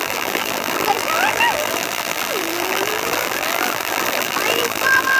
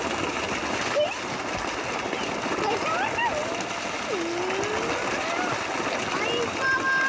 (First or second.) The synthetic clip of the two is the first